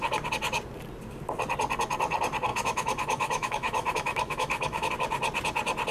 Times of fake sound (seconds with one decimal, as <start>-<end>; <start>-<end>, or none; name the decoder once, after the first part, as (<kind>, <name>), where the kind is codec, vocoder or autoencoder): 2.5-4.9 (autoencoder, DAC-VAE)